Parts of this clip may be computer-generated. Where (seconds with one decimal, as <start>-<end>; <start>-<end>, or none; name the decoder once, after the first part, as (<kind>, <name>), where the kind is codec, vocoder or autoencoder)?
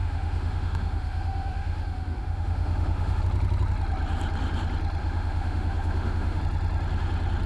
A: 0.0-3.2 (autoencoder, DAC-VAE); 5.0-6.4